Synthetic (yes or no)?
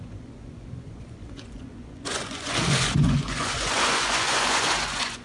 yes